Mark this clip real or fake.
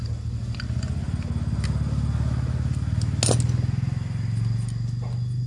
real